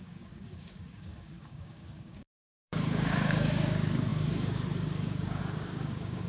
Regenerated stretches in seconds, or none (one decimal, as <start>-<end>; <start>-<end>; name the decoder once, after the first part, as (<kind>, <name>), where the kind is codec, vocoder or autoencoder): 0.0-6.3 (codec, DAC)